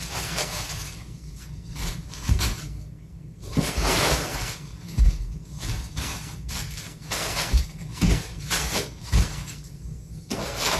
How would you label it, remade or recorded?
remade